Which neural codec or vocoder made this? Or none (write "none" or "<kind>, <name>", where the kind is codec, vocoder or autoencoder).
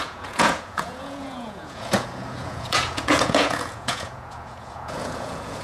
vocoder, Vocos